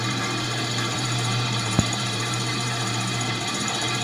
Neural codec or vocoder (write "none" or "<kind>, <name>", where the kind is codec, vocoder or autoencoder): vocoder, BigVGAN v2